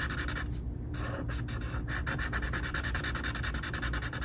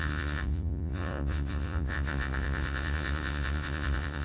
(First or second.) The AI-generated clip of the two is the second